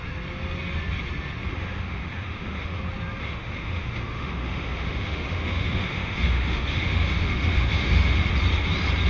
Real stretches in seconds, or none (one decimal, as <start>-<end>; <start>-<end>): 0.0-1.5; 2.8-3.2; 8.3-9.1